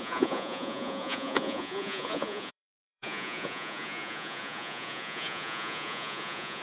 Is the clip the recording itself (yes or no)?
no